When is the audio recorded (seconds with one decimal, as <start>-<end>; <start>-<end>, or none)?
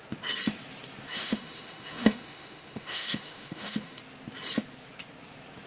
0.0-1.1; 4.0-5.7